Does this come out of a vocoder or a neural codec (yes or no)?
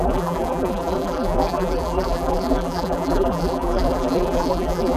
yes